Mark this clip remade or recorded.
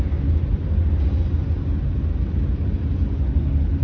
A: recorded